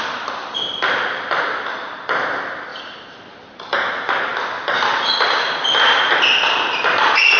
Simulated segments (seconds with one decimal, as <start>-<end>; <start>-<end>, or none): 2.7-3.9